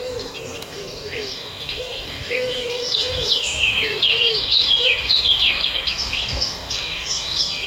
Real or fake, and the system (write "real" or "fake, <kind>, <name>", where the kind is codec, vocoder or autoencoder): fake, codec, DAC